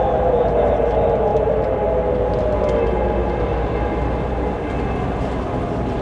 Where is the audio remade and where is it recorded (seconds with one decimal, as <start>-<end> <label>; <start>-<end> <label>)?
0.0-6.0 recorded